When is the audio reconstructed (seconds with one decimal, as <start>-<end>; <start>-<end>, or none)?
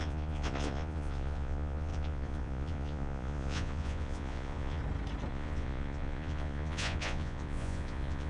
0.0-4.8; 5.3-8.3